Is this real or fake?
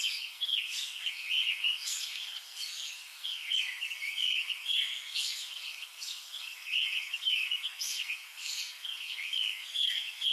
fake